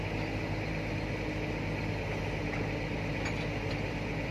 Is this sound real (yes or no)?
yes